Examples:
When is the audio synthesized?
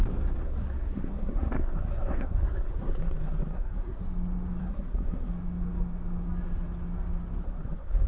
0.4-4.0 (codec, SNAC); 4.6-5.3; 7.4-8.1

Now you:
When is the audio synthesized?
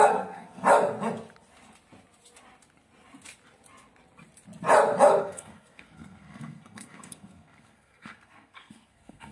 0.0-0.6 (codec, SNAC); 5.2-9.3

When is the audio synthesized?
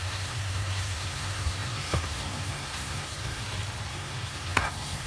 0.0-3.4 (codec, SNAC); 3.9-5.1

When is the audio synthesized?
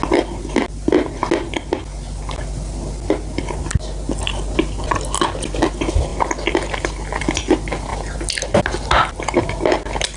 none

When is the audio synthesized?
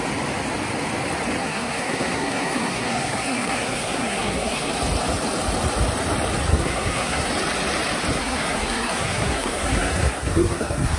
1.4-4.8 (codec, SNAC); 6.5-7.3; 8.1-11.0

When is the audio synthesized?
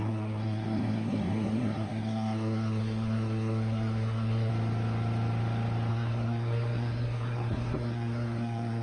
0.0-4.5 (codec, SNAC); 5.9-8.8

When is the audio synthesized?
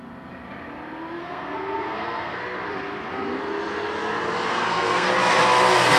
1.2-2.4 (codec, SNAC); 4.5-5.1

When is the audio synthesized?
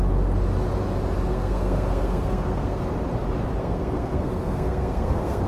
1.3-2.8 (codec, SNAC); 3.6-5.5